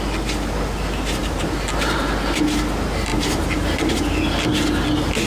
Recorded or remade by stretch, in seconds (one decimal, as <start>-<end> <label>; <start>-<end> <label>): 0.0-1.2 recorded; 1.2-2.0 remade; 2.0-3.1 recorded; 3.1-3.9 remade; 3.9-5.3 recorded